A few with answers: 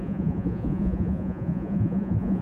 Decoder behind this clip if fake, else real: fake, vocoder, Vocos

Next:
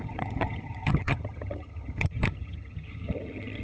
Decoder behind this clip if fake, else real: fake, vocoder, HiFi-GAN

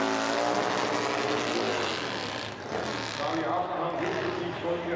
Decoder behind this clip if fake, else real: real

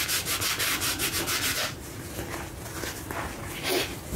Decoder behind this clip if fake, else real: real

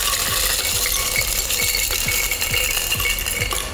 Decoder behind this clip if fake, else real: real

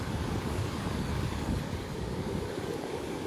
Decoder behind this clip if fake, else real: fake, codec, DAC